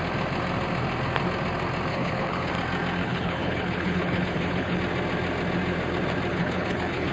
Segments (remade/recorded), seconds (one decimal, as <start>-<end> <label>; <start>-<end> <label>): 0.0-1.9 recorded; 1.9-2.5 remade; 2.5-3.0 recorded; 3.0-4.8 remade; 4.8-6.3 recorded; 6.3-7.1 remade